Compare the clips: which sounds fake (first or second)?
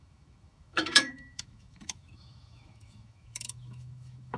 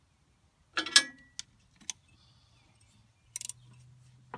first